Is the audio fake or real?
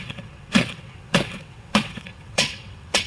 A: fake